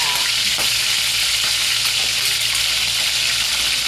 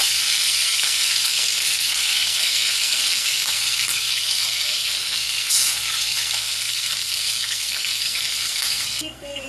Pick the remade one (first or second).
second